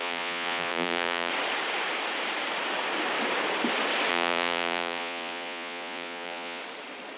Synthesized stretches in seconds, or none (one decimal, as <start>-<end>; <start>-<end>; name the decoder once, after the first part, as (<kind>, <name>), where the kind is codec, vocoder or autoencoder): 0.0-1.3 (vocoder, Vocos); 4.1-6.6